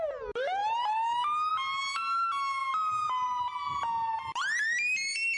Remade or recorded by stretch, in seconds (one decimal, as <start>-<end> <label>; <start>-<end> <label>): 0.0-5.4 recorded